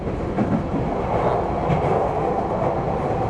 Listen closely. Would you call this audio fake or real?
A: real